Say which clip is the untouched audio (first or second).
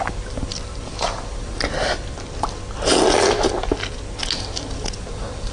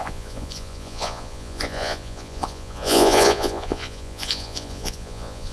first